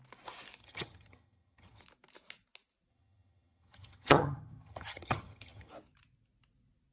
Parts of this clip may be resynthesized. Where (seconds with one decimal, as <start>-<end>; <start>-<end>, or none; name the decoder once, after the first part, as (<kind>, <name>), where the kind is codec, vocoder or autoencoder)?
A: 0.6-1.8 (vocoder, HiFi-GAN); 2.9-5.7